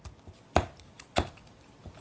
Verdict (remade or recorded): recorded